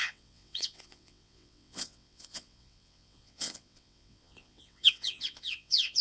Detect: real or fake fake